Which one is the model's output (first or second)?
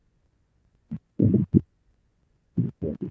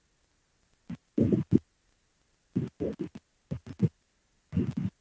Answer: first